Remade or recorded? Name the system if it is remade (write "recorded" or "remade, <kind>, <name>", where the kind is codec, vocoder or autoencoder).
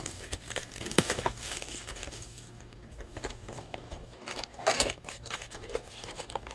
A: remade, codec, DAC